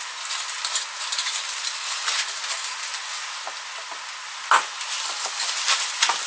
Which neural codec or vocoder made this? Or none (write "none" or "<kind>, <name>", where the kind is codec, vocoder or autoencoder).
none